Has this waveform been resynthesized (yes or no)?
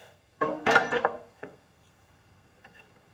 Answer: yes